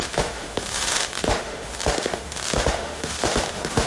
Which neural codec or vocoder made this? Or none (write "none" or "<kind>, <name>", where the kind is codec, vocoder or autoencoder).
autoencoder, DAC-VAE